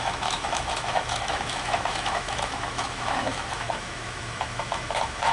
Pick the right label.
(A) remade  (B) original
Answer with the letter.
A